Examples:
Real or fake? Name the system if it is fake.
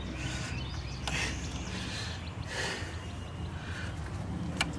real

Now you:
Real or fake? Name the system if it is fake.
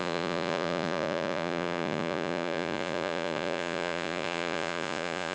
fake, vocoder, Vocos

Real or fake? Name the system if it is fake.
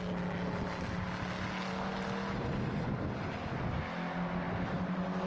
real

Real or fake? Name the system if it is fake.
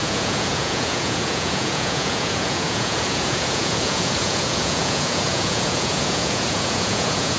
fake, vocoder, Vocos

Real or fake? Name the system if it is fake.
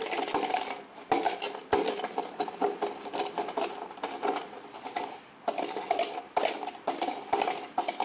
real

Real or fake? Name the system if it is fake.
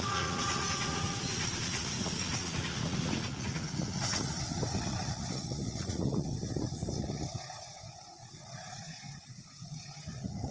fake, vocoder, Vocos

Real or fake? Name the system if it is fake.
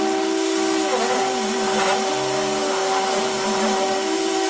real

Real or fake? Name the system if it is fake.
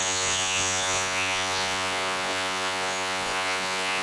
fake, vocoder, Vocos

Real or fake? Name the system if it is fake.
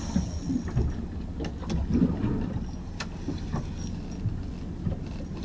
real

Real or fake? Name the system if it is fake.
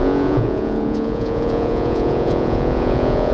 fake, vocoder, Vocos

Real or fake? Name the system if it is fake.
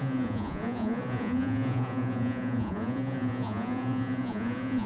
fake, vocoder, Vocos